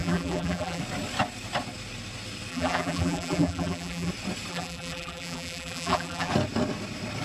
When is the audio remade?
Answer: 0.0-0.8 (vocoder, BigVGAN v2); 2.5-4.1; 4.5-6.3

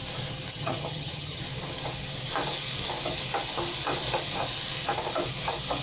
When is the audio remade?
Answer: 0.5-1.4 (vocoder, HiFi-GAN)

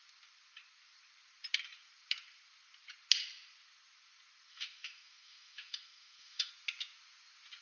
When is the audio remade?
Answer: 4.5-6.5 (autoencoder, DAC-VAE)

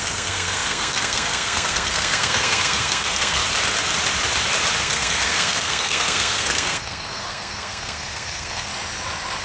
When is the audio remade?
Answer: 0.0-3.4 (codec, SNAC); 4.8-8.7

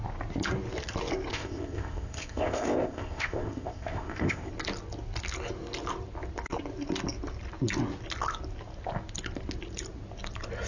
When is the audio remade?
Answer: 1.3-4.5 (codec, ZipCodec)

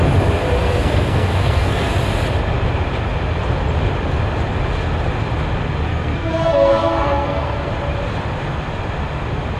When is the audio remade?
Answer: 0.6-1.9 (codec, SNAC); 5.9-7.7